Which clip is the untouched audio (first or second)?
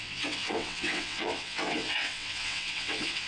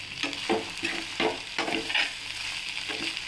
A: second